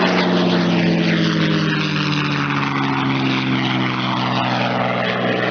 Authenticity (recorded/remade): recorded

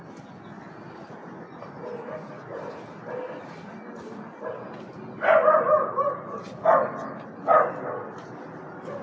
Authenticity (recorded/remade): recorded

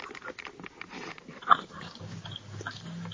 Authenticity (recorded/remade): remade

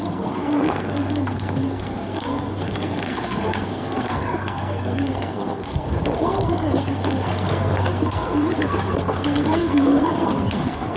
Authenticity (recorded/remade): remade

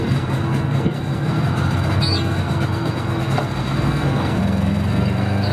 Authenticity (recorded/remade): remade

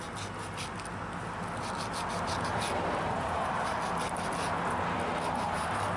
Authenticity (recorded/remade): recorded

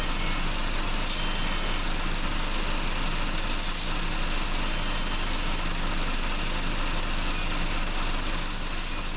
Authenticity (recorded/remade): recorded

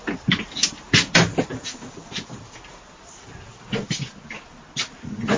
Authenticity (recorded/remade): recorded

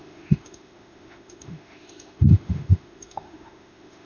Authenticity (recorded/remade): remade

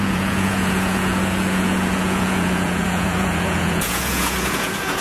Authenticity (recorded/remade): remade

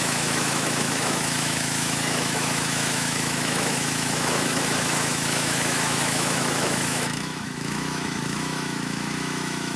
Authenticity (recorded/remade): remade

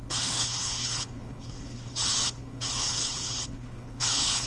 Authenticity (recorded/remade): remade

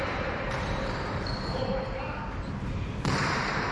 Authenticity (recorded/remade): remade